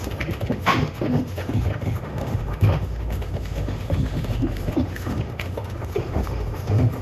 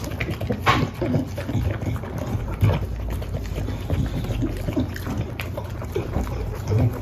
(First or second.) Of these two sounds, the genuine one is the second